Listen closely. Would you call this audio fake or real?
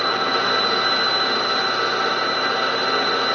real